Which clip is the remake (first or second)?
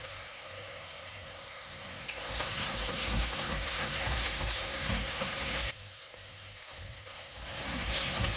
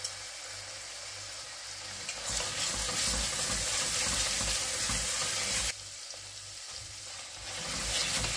first